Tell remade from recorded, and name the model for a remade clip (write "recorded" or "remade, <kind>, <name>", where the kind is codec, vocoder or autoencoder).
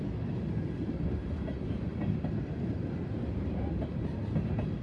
recorded